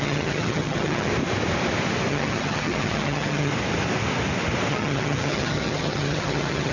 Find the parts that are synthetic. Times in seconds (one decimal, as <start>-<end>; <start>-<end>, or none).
0.0-1.1; 2.1-3.5; 4.7-6.7